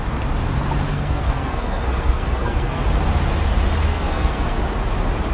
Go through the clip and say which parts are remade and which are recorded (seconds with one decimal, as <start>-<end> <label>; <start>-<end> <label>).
0.0-0.9 recorded; 0.9-2.8 remade; 2.8-3.9 recorded; 3.9-4.6 remade; 4.6-5.3 recorded